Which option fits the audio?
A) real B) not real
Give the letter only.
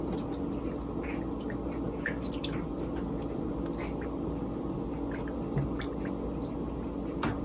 A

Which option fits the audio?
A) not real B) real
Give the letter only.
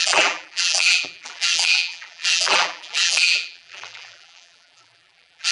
A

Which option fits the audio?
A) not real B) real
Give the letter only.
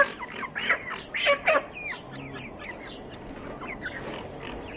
B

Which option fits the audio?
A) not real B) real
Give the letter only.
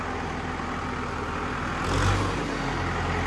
B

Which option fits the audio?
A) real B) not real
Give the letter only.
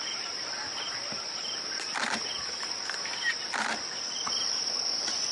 B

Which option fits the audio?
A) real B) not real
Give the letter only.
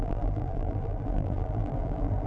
B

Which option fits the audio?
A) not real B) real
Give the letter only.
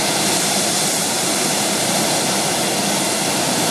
A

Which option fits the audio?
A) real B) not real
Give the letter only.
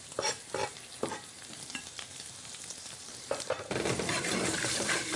B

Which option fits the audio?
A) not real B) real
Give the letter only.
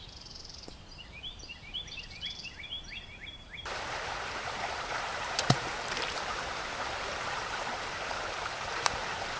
A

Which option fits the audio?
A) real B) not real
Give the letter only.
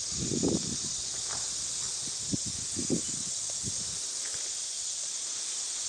A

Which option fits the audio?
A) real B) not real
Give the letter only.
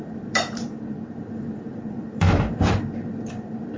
B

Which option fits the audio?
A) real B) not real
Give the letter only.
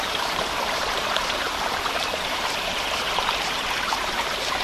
B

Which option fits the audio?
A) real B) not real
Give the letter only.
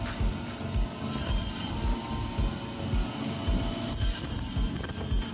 A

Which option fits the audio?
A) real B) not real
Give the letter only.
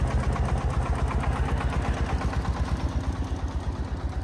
A